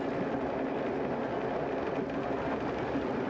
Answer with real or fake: real